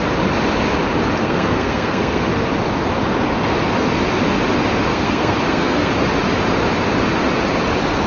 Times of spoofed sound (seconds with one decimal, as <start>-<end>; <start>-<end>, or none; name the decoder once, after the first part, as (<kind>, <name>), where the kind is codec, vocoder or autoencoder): 1.2-2.3 (codec, SNAC); 4.9-5.9